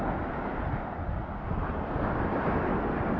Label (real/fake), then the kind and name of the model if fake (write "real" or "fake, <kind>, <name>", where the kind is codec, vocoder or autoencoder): real